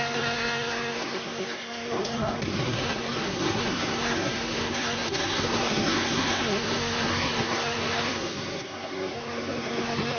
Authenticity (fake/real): fake